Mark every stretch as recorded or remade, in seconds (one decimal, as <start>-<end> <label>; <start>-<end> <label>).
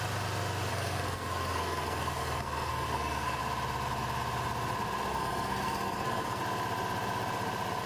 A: 0.0-0.7 recorded; 0.7-3.4 remade; 3.4-5.1 recorded; 5.1-6.4 remade; 6.4-7.9 recorded